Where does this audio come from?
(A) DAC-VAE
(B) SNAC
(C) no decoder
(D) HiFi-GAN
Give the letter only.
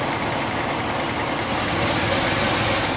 C